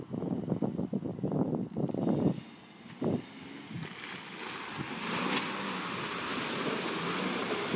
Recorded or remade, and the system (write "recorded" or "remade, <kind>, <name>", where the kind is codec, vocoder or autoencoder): recorded